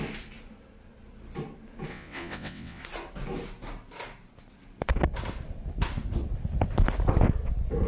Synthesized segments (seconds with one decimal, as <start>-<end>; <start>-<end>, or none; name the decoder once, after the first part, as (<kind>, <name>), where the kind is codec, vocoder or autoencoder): 1.9-2.8 (vocoder, WaveNeXt)